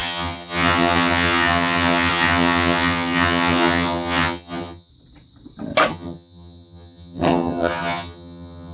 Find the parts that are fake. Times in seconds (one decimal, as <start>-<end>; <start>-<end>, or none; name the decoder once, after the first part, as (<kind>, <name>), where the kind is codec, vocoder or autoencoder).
0.0-4.9 (vocoder, HiFi-GAN); 5.9-8.7